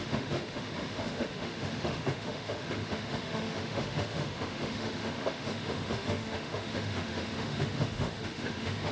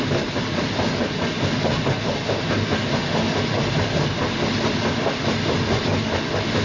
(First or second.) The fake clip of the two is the first